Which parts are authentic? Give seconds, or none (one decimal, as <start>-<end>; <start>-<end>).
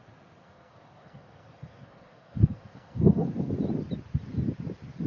0.0-0.4; 3.5-5.1